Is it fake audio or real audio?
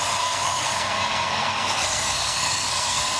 fake